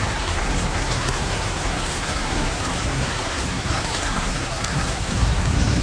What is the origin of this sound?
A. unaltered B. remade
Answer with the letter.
B